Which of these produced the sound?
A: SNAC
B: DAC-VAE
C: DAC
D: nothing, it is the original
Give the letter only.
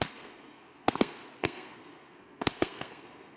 A